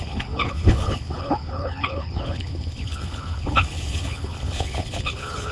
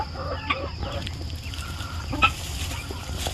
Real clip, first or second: second